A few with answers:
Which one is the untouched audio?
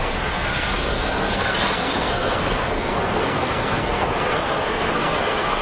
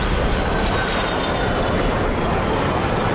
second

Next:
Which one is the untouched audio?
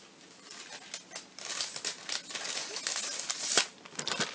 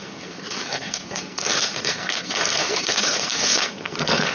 first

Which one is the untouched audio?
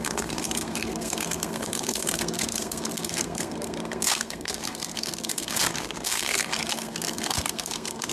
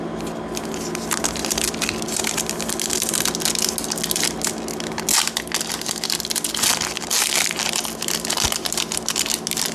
second